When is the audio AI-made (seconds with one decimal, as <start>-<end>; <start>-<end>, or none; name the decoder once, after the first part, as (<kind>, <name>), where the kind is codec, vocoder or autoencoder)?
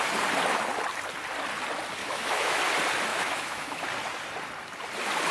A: 2.0-2.6 (autoencoder, DAC-VAE); 3.1-3.8